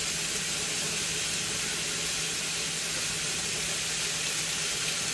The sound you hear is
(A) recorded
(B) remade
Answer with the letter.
A